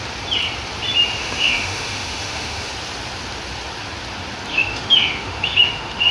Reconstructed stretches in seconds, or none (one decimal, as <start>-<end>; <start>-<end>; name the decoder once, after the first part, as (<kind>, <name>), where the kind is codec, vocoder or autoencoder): 1.2-2.7 (autoencoder, DAC-VAE); 4.5-6.1